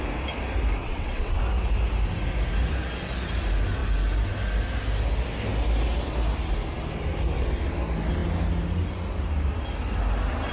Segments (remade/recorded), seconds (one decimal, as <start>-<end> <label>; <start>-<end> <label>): 0.0-0.8 recorded; 0.8-1.4 remade; 1.4-10.5 recorded